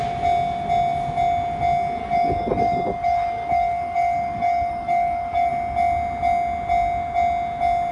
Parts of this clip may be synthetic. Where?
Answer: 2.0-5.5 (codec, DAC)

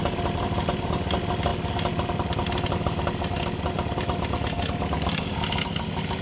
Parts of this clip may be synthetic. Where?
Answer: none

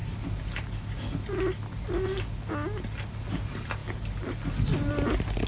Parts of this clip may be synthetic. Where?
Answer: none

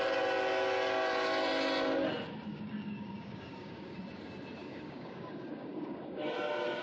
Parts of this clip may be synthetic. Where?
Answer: 2.5-4.0 (codec, DAC); 4.6-6.2